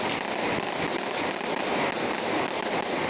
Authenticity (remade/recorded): recorded